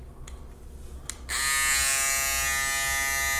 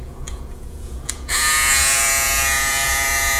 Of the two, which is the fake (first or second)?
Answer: second